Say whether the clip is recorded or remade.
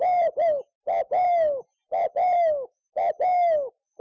recorded